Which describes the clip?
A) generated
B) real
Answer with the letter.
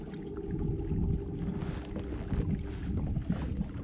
B